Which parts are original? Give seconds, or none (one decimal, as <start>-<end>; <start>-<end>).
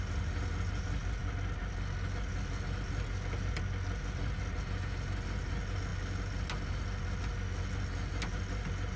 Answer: 0.0-9.0